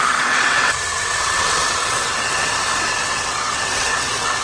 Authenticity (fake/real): fake